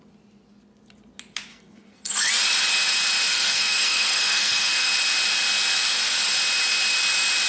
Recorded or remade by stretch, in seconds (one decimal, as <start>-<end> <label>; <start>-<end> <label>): 0.0-1.5 recorded; 1.5-2.3 remade; 2.3-3.3 recorded; 3.3-4.9 remade; 4.9-7.5 recorded